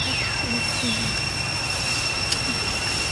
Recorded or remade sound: recorded